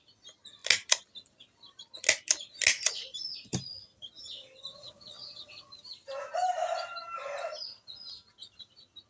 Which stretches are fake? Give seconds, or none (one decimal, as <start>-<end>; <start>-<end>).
4.7-5.7